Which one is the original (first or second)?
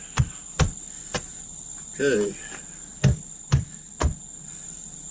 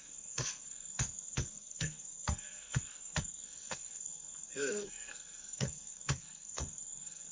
first